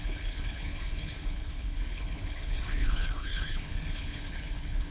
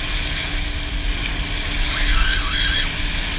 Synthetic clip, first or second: first